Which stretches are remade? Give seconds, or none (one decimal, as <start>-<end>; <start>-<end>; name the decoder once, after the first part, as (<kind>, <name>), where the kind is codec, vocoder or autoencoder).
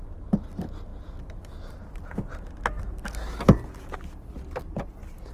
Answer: none